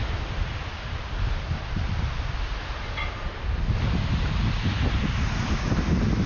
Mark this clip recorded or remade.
recorded